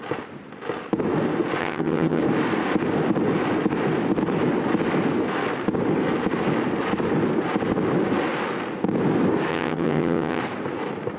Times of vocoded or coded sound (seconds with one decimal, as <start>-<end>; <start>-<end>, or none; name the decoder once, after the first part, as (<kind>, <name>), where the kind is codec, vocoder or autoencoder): 1.6-2.2 (vocoder, HiFi-GAN); 9.5-10.4